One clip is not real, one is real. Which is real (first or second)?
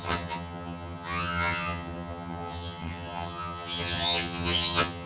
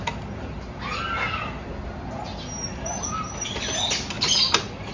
second